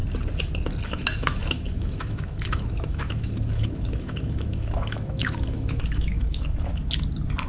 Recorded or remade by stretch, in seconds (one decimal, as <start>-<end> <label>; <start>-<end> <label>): 0.0-0.9 recorded; 0.9-6.7 remade; 6.7-7.5 recorded